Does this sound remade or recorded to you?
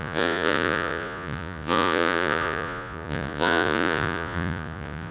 remade